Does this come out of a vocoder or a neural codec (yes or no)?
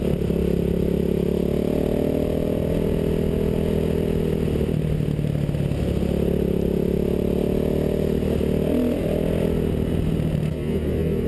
no